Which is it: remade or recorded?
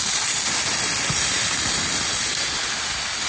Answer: recorded